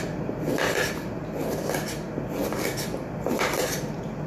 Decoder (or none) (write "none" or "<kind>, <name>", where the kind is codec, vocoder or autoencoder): none